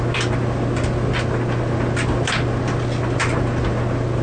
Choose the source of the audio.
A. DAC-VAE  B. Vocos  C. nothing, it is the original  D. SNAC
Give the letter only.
C